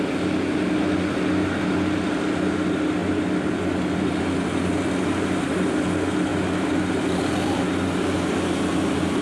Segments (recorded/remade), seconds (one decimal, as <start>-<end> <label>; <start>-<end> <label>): 0.0-9.2 recorded